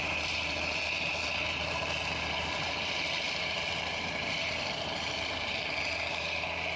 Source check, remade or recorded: remade